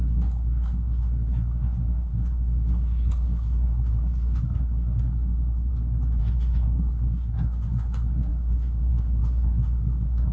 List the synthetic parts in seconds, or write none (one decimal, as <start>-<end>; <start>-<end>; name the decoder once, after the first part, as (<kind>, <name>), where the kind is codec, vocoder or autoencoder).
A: 0.0-5.7 (codec, SNAC); 6.2-10.3